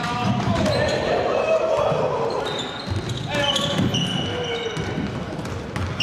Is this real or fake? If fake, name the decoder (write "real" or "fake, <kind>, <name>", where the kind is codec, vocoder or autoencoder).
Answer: real